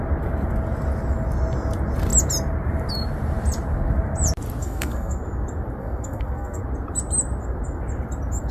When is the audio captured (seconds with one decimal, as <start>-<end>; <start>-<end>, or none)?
0.0-4.6; 5.2-5.8; 6.6-8.5